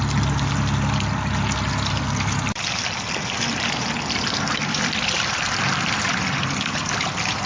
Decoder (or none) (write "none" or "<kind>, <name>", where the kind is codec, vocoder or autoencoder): none